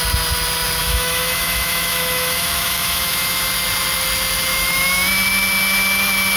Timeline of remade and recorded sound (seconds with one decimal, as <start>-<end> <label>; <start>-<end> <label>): 0.0-0.8 recorded; 0.8-3.5 remade; 3.5-4.5 recorded; 4.5-5.1 remade; 5.1-6.4 recorded